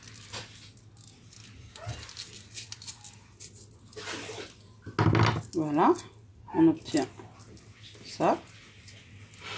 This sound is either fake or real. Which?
real